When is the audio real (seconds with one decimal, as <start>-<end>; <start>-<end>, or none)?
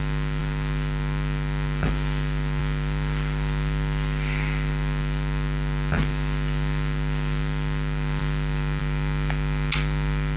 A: 0.0-10.4